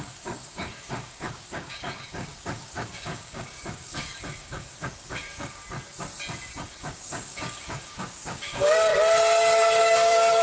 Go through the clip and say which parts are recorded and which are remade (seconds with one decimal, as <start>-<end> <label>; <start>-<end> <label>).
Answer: 0.0-5.6 remade; 5.6-6.7 recorded; 6.7-8.9 remade; 8.9-9.8 recorded; 9.8-10.4 remade